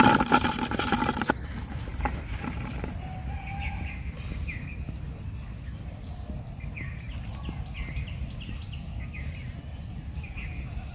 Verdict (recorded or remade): recorded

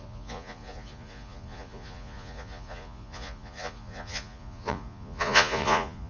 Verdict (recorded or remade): remade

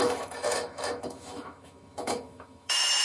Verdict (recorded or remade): remade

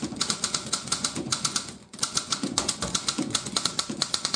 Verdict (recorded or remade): remade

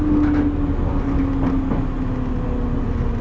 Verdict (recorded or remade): recorded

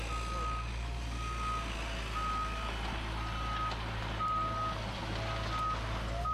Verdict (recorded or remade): recorded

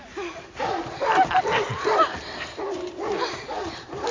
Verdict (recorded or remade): recorded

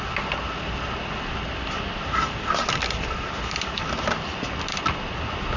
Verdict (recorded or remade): recorded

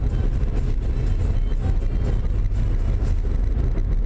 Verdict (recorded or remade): recorded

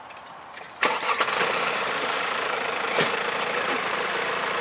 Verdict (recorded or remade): remade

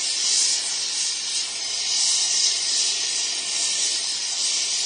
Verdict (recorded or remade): recorded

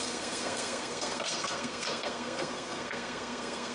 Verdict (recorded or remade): remade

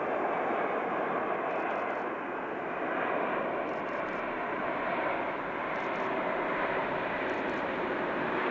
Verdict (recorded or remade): recorded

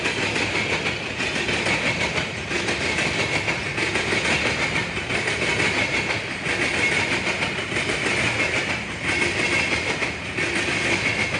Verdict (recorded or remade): recorded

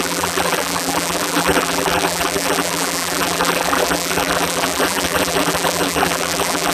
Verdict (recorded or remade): remade